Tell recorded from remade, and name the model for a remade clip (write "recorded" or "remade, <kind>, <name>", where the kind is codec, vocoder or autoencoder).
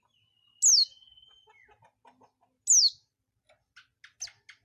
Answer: recorded